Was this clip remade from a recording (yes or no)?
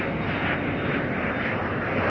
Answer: no